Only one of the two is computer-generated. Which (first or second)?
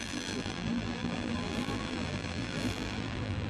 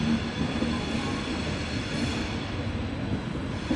first